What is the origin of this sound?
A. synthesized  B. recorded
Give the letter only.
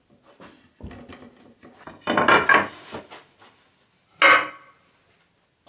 B